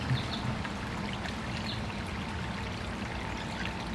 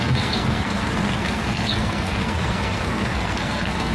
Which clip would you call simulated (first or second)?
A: second